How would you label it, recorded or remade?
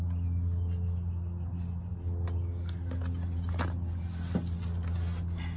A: recorded